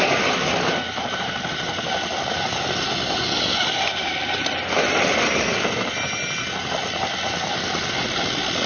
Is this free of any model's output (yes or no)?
yes